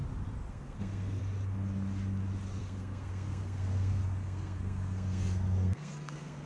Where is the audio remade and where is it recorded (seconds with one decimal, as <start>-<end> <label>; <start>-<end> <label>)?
0.0-0.5 recorded; 0.5-1.2 remade; 1.2-2.6 recorded; 2.6-6.5 remade